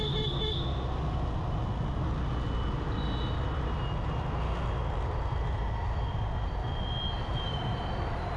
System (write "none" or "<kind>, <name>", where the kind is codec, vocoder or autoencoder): none